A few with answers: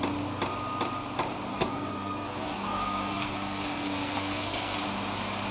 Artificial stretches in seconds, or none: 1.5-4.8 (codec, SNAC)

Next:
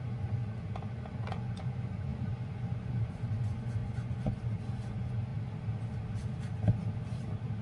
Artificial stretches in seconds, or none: 0.0-0.4 (vocoder, Vocos); 0.9-5.3

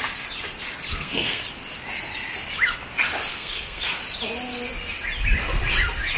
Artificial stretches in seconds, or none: 0.9-1.4 (codec, SNAC); 3.3-4.0

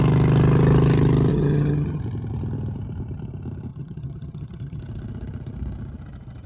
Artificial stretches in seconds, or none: 1.3-2.0 (vocoder, HiFi-GAN); 3.7-4.8

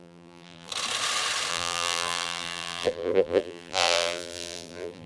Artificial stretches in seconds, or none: 0.0-0.7 (vocoder, BigVGAN v2); 1.5-5.1

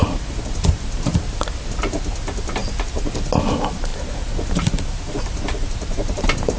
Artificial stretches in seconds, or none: 0.0-1.1 (vocoder, BigVGAN v2); 2.6-3.1; 3.9-6.6

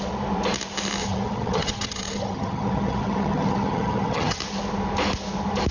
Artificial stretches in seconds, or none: 1.0-4.4 (vocoder, HiFi-GAN)